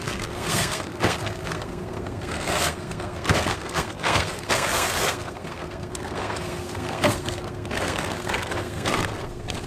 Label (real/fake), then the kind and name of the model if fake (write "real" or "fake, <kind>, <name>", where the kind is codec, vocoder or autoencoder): fake, codec, SNAC